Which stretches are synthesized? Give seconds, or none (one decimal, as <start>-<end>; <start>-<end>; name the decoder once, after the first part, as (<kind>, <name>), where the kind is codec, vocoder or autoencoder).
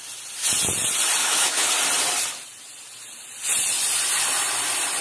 1.2-1.7 (autoencoder, DAC-VAE)